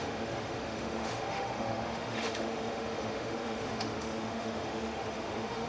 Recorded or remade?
remade